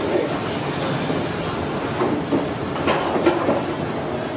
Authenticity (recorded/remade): remade